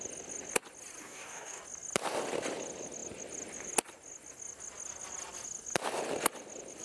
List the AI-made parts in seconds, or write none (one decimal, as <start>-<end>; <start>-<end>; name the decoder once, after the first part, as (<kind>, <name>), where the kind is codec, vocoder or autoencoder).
1.0-1.6 (codec, DAC)